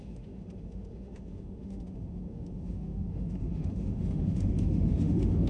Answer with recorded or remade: remade